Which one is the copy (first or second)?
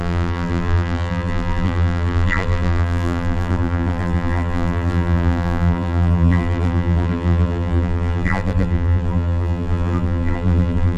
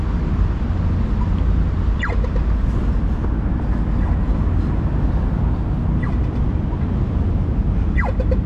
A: first